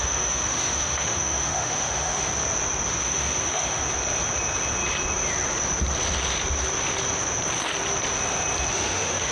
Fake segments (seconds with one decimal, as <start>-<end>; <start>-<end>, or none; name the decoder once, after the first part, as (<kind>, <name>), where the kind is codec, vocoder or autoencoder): 0.0-2.3 (autoencoder, DAC-VAE); 3.0-3.8; 8.7-9.3